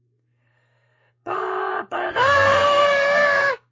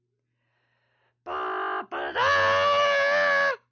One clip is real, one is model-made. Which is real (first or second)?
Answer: second